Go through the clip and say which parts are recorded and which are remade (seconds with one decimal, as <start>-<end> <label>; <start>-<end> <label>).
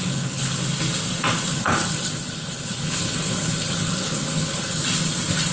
0.0-0.6 remade; 0.6-1.5 recorded; 1.5-4.8 remade; 4.8-5.5 recorded